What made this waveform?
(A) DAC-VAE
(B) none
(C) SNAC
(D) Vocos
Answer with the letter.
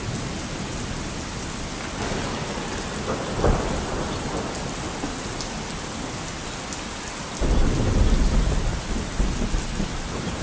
B